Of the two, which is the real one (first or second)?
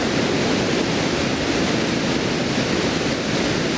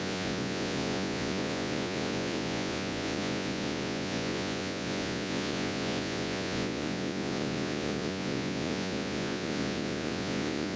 first